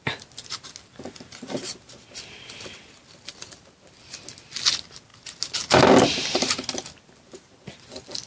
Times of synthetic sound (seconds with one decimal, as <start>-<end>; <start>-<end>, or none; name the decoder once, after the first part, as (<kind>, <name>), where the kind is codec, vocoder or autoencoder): none